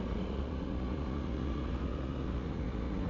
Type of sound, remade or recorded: remade